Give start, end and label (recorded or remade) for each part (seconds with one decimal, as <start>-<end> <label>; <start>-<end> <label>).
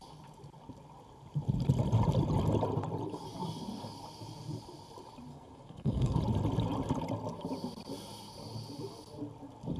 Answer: 0.0-5.3 recorded; 5.3-6.2 remade; 6.2-9.8 recorded